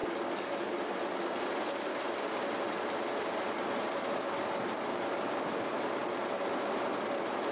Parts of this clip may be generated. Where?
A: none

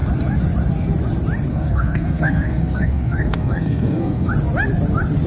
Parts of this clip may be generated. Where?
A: 1.5-4.3 (codec, SNAC)

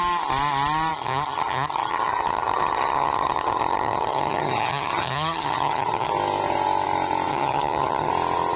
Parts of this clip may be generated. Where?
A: 0.9-6.1 (vocoder, HiFi-GAN); 7.3-8.1

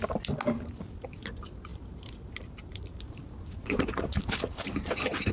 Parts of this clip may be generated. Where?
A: 1.7-5.3 (vocoder, BigVGAN v2)

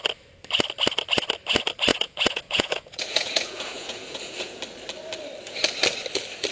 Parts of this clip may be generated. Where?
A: 1.9-4.6 (vocoder, Vocos)

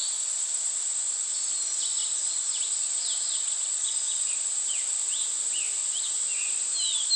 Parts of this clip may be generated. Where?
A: none

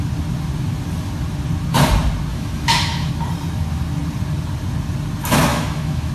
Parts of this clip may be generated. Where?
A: 2.3-3.1 (autoencoder, DAC-VAE); 5.5-6.1

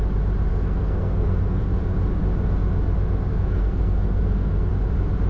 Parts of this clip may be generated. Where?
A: 0.5-1.8 (codec, SNAC); 3.3-4.7